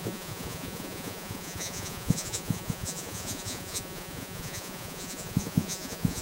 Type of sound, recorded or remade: remade